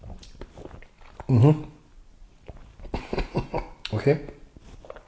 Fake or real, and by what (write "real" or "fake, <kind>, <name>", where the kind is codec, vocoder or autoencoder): real